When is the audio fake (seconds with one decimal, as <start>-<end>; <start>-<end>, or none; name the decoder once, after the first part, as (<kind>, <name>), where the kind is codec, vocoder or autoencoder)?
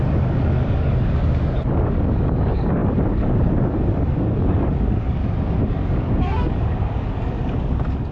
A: 0.0-8.1 (codec, DAC)